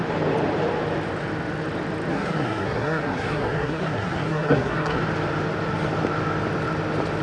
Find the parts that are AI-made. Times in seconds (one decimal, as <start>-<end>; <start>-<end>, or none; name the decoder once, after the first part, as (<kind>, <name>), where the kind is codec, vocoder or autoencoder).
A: 2.1-5.0 (codec, SNAC)